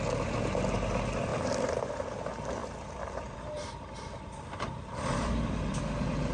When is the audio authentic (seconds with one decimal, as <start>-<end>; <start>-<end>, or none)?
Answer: 0.0-2.6; 5.8-6.3

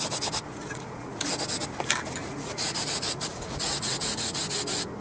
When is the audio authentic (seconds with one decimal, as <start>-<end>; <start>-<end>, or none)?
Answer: 0.0-0.5; 1.3-2.2; 4.4-5.0